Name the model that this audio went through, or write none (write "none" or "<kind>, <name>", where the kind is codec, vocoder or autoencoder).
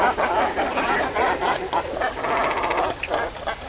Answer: none